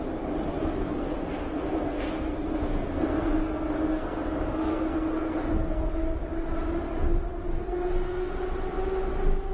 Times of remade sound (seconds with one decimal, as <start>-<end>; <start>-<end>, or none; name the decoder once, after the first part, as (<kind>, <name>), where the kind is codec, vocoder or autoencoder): 0.6-5.9 (codec, SNAC); 7.5-8.3